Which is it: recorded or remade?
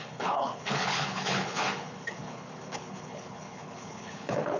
remade